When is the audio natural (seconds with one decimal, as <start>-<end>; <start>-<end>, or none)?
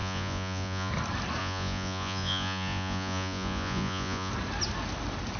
0.9-1.4; 4.3-5.4